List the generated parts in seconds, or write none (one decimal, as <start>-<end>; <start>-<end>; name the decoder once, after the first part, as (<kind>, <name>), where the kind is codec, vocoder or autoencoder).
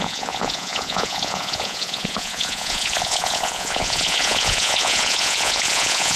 0.0-6.2 (vocoder, Vocos)